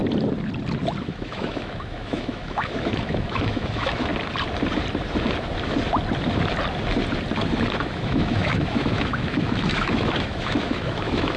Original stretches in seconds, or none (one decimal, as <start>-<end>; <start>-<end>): 0.0-1.0; 4.1-7.8